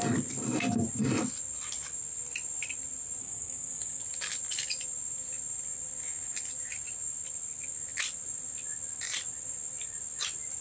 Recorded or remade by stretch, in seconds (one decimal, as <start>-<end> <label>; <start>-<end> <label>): 0.0-3.2 recorded; 3.2-4.0 remade; 4.0-10.6 recorded